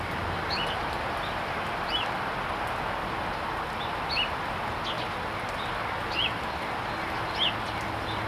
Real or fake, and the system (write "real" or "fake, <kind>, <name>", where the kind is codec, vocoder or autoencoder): real